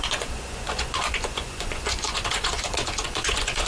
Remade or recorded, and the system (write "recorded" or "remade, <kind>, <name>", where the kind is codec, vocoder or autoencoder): remade, vocoder, Vocos